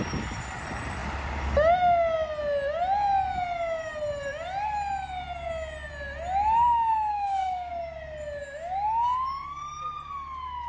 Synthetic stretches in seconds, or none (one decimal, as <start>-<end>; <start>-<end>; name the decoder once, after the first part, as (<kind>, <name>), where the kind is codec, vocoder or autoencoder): 7.1-7.7 (codec, DAC)